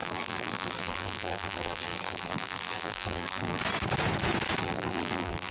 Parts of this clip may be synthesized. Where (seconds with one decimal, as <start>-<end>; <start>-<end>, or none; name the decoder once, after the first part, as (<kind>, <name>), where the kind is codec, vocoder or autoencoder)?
0.0-3.6 (vocoder, BigVGAN v2); 4.6-5.5